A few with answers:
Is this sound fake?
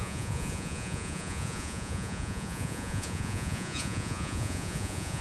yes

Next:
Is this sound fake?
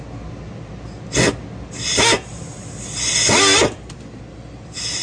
no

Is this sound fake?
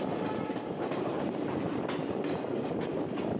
no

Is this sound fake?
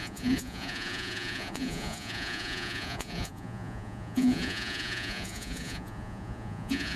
yes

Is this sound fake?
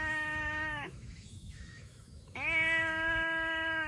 yes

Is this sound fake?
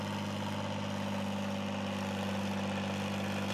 no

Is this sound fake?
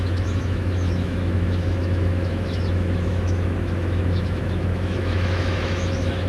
yes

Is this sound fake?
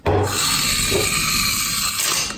no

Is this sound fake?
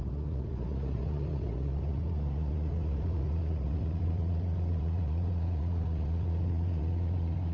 yes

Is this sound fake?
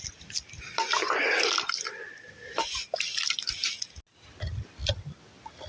no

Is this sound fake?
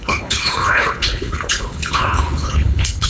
yes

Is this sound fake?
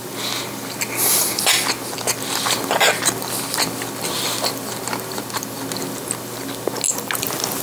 no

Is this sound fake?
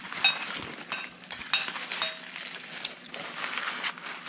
no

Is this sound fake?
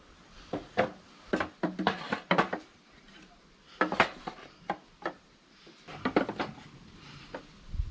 yes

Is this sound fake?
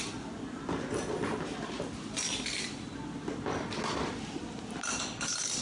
no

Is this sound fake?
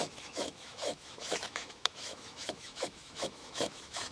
yes